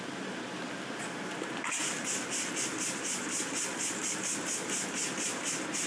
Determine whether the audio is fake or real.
real